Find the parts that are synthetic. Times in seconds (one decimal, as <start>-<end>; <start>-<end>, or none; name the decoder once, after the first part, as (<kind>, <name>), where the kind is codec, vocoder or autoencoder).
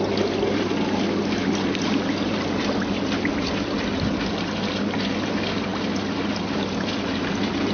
none